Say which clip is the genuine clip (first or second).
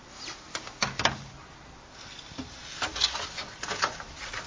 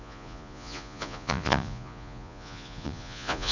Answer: first